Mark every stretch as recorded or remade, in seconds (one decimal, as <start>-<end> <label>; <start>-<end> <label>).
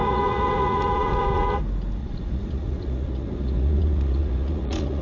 0.0-1.6 remade; 1.6-2.0 recorded; 2.0-5.0 remade